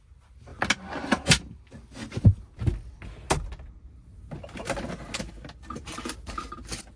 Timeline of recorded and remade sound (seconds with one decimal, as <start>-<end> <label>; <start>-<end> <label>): 0.0-7.0 recorded